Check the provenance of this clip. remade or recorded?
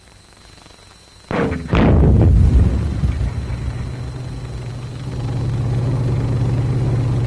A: recorded